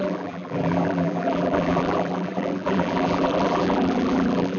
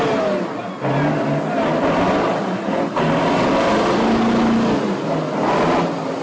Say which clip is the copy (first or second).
first